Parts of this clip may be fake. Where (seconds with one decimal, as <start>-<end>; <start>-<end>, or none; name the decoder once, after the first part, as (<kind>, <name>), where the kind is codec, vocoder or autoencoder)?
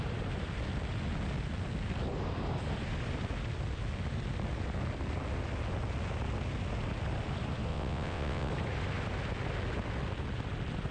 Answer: 7.7-8.5 (vocoder, WaveNeXt)